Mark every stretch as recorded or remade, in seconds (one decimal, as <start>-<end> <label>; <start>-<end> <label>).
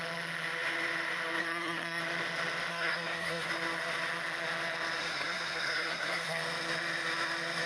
0.0-1.4 recorded; 1.4-2.0 remade; 2.0-2.7 recorded; 2.7-3.5 remade; 3.5-5.0 recorded; 5.0-6.4 remade; 6.4-7.7 recorded